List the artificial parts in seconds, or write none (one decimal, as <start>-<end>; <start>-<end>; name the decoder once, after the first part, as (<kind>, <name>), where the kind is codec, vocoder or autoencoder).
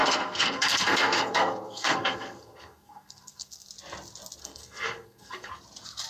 0.0-3.7 (codec, SNAC); 4.4-5.5